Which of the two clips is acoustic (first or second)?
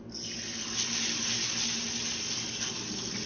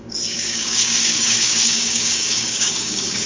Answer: first